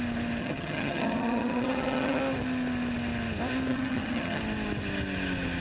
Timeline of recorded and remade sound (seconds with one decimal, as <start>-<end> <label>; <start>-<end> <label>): 0.0-0.4 recorded; 0.4-2.2 remade; 2.2-3.7 recorded; 3.7-4.4 remade; 4.4-5.6 recorded